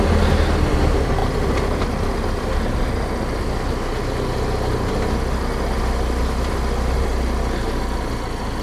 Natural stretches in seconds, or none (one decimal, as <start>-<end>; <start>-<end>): 0.0-8.6